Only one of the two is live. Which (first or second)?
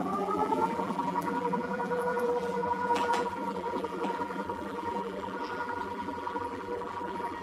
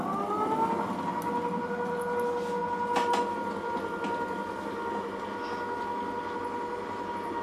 second